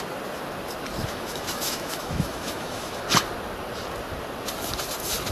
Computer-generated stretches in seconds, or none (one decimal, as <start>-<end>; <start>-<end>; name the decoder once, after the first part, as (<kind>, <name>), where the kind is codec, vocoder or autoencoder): 1.0-3.0 (autoencoder, DAC-VAE)

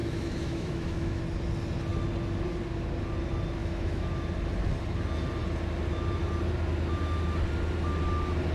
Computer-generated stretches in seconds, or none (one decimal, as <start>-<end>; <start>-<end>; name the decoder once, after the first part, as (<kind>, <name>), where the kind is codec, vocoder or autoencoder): 0.0-1.2 (autoencoder, DAC-VAE); 3.6-4.1